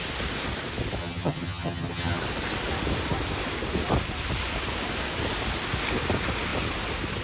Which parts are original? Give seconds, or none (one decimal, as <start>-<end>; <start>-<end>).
0.0-1.0; 2.2-7.2